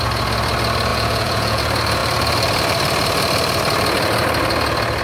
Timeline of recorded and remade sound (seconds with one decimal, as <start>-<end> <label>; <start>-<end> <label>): 0.0-0.9 recorded; 0.9-1.6 remade; 1.6-5.0 recorded